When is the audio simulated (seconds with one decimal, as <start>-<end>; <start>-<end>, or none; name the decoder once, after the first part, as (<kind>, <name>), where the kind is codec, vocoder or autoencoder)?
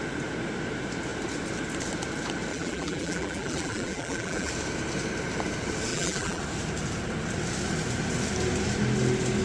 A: 2.5-4.5 (vocoder, BigVGAN v2); 5.9-6.4